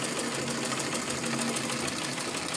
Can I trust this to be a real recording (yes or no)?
yes